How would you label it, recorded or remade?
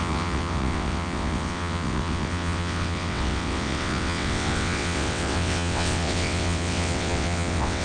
remade